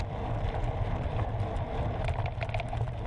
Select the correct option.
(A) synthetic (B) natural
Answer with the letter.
B